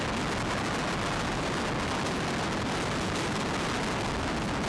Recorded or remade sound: recorded